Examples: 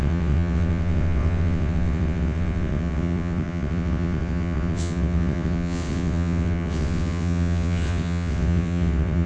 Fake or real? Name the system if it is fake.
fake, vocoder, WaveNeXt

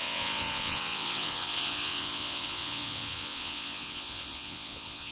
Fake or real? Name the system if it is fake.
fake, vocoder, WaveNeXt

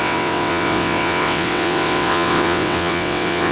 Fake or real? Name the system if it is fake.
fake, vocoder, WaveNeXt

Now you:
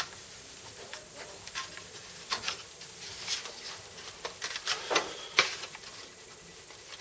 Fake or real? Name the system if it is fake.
real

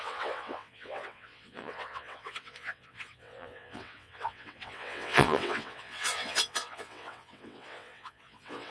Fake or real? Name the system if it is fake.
fake, vocoder, WaveNeXt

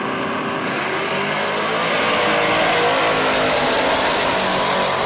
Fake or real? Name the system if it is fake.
real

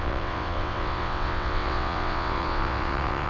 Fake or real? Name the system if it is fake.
fake, vocoder, WaveNeXt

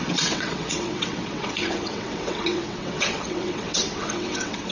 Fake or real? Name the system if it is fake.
fake, vocoder, WaveNeXt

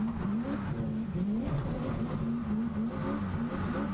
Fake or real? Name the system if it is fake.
real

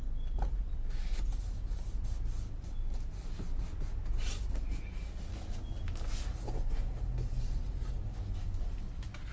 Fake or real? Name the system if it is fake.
real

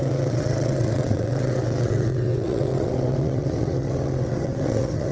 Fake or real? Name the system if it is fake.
fake, vocoder, WaveNeXt